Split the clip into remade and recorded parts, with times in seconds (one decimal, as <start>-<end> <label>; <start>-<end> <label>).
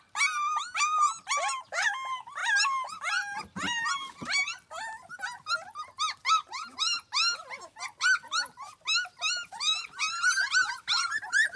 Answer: 0.0-4.2 remade; 4.2-9.3 recorded; 9.3-11.6 remade